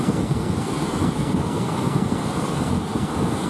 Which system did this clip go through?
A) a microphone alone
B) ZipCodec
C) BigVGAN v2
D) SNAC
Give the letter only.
D